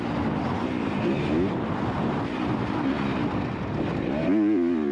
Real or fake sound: real